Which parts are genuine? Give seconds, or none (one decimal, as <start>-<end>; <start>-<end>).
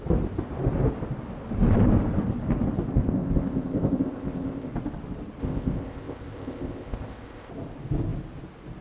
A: 0.0-2.9; 4.7-5.4; 7.5-8.8